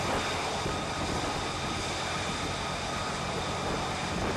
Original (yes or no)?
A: yes